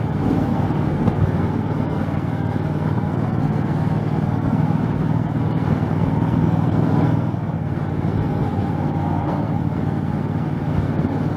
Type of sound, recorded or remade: remade